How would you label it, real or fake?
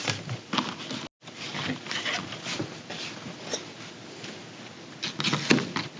real